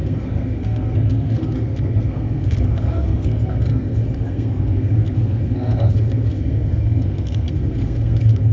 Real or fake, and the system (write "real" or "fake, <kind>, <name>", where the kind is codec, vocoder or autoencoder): fake, codec, SNAC